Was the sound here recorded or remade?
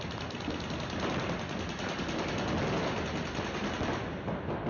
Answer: recorded